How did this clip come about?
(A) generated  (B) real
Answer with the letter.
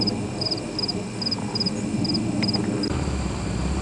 B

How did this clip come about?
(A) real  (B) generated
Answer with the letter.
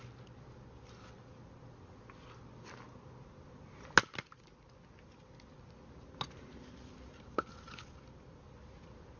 A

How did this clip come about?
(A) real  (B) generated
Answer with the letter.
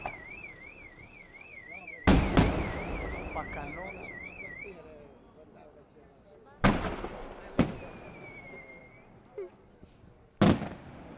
A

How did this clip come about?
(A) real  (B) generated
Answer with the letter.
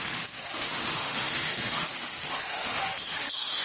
B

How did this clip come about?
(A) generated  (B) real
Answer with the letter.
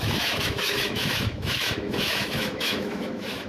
A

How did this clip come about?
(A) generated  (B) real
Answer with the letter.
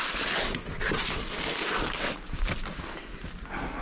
B